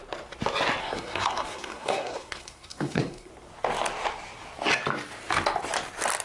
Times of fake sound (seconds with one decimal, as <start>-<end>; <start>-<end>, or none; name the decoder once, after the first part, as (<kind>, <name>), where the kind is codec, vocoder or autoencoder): 0.8-3.3 (codec, SNAC)